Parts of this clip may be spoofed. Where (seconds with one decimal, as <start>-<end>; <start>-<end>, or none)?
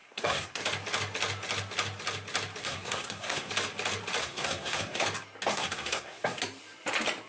0.0-0.6; 2.6-3.5; 4.2-5.0; 5.5-6.4